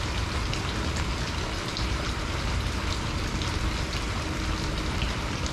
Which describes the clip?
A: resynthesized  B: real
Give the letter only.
B